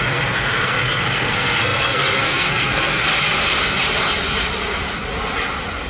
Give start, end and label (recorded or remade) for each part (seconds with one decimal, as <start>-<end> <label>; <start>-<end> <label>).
0.0-3.1 remade; 3.1-5.9 recorded